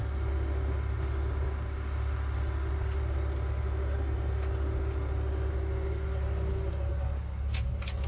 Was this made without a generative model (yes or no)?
yes